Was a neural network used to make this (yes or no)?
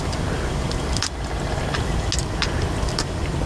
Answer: no